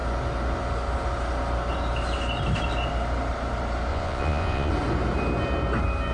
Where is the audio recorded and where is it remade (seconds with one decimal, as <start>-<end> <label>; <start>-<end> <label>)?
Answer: 0.0-3.9 recorded; 3.9-4.7 remade; 4.7-6.1 recorded